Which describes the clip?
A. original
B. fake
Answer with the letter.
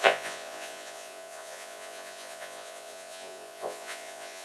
B